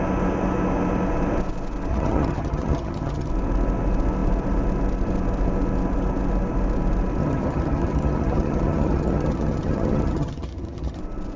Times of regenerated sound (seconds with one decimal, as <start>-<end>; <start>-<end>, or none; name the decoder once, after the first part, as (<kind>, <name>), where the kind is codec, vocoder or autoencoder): 1.9-3.3 (vocoder, HiFi-GAN); 7.2-11.0